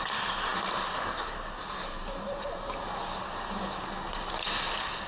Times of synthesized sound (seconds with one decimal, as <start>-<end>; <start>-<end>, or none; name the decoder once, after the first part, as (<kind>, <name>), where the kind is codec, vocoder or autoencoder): 1.6-2.9 (vocoder, BigVGAN v2)